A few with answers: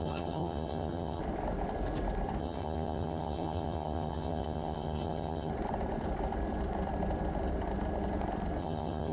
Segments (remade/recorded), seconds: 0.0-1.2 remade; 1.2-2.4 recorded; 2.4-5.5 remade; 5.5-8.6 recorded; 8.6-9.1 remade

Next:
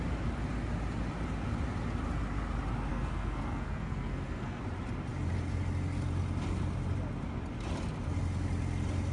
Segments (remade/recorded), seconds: 0.0-2.9 recorded; 2.9-4.6 remade; 4.6-9.1 recorded

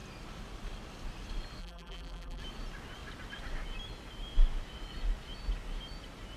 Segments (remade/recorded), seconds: 0.0-1.6 recorded; 1.6-2.4 remade; 2.4-6.4 recorded

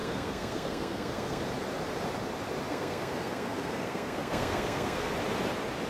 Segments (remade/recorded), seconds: 0.0-1.4 remade; 1.4-2.7 recorded; 2.7-5.1 remade; 5.1-5.9 recorded

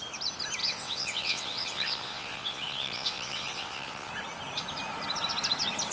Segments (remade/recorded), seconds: 0.0-0.6 recorded; 0.6-4.1 remade; 4.1-5.9 recorded